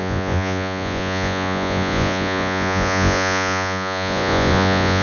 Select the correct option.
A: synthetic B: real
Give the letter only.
A